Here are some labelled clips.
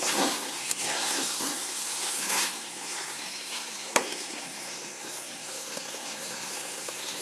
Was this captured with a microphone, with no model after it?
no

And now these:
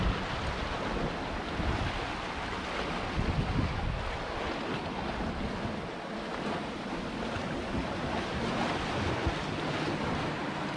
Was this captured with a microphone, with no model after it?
yes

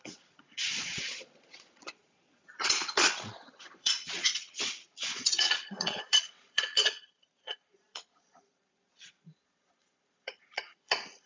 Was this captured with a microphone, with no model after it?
no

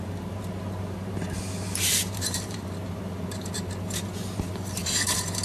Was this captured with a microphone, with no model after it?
no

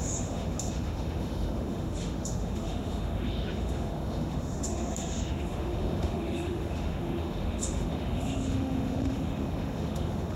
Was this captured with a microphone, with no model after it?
no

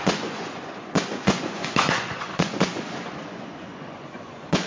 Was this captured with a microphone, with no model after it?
no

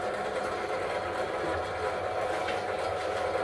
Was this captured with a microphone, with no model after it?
yes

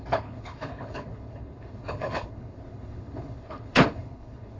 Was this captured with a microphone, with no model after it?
no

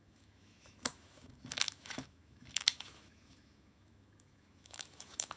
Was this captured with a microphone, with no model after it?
no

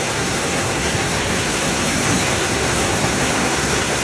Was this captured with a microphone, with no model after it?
no